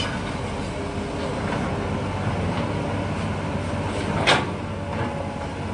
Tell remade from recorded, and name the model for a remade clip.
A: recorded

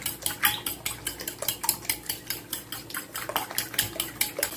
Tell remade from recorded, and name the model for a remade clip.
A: recorded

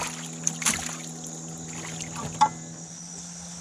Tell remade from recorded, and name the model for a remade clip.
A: recorded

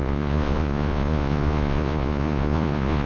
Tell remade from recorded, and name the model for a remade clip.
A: remade, vocoder, Vocos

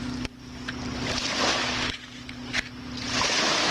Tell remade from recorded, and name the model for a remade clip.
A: recorded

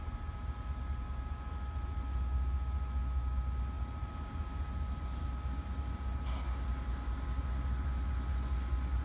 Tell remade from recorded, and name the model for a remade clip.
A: recorded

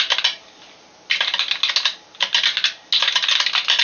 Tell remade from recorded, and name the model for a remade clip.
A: recorded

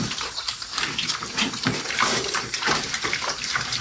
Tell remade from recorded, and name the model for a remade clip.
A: remade, vocoder, BigVGAN v2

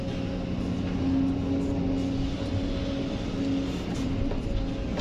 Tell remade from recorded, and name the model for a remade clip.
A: recorded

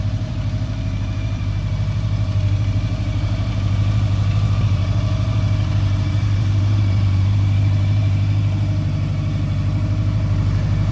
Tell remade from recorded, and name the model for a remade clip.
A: remade, vocoder, BigVGAN v2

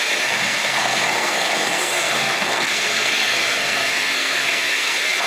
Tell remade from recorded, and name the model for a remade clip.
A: remade, codec, SNAC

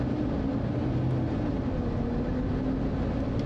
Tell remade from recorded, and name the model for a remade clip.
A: recorded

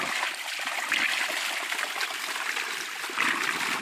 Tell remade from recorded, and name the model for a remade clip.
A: recorded